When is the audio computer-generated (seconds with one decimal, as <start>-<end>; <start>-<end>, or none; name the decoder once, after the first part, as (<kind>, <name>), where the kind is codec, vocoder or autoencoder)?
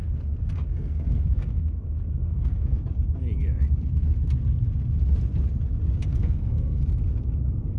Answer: 0.0-2.8 (codec, SNAC); 6.1-6.8